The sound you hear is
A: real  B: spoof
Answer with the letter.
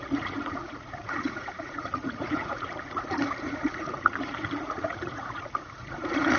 B